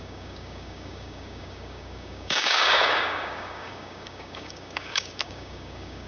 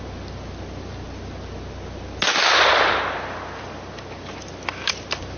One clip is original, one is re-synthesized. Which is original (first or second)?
second